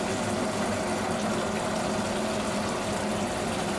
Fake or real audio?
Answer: real